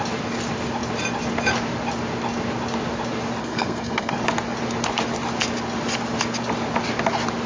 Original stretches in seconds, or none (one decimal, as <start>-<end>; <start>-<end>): 0.0-3.4; 4.1-7.5